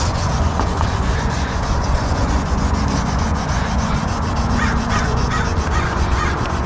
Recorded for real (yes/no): no